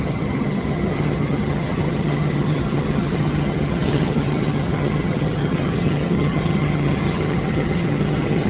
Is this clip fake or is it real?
fake